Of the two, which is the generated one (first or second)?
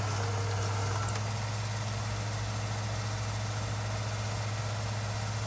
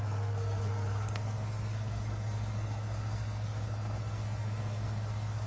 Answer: second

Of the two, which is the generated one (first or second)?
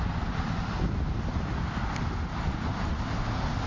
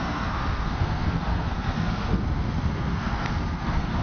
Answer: second